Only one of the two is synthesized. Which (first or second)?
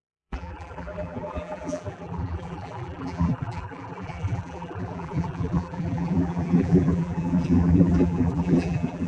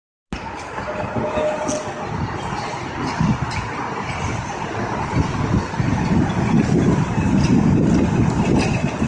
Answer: first